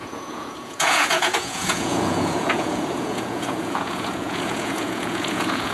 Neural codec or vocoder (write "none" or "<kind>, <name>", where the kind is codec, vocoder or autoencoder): vocoder, Vocos